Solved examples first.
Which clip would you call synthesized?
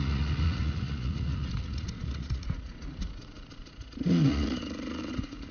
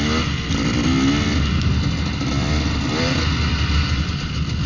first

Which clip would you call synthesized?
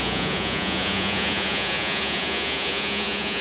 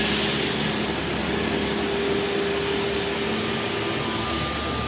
first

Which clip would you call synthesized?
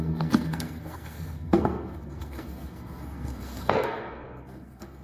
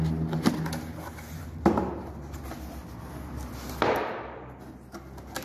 first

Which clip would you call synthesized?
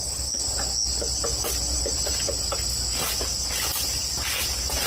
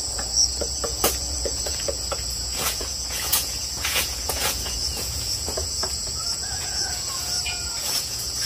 second